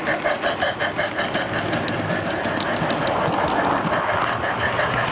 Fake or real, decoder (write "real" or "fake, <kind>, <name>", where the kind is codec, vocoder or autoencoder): real